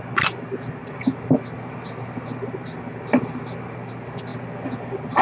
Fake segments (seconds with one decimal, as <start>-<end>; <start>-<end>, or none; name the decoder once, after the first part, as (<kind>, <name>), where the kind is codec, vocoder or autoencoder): none